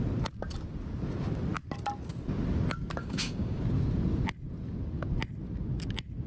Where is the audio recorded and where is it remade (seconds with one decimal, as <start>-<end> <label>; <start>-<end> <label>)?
0.0-3.0 recorded; 3.0-3.6 remade; 3.6-6.3 recorded